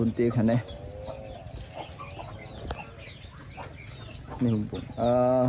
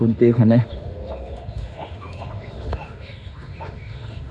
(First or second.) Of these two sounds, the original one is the first